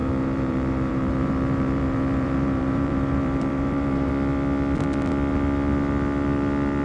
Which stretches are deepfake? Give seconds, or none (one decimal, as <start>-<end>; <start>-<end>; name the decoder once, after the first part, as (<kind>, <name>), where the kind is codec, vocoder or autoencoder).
0.0-4.1 (vocoder, BigVGAN v2)